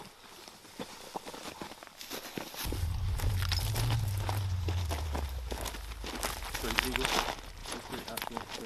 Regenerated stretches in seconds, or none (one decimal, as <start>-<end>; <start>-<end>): 7.6-8.2